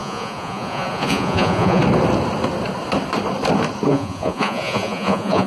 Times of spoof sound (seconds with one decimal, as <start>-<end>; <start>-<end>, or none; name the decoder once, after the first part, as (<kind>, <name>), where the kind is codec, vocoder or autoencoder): 0.0-1.8 (vocoder, Vocos); 3.9-5.5